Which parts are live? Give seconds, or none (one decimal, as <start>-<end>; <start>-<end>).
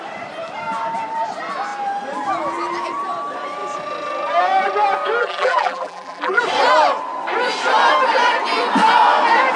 0.0-5.2; 6.4-9.6